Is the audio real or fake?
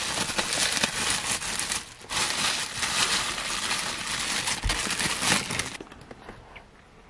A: real